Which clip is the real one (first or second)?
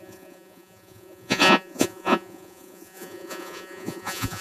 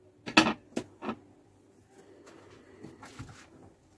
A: second